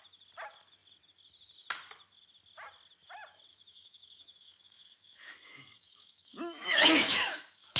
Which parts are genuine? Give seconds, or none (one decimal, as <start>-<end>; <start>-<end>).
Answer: 0.0-3.5